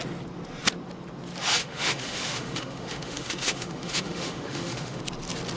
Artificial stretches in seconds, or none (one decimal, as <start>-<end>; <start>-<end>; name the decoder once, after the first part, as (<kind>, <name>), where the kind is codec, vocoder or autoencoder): 1.6-5.0 (autoencoder, DAC-VAE)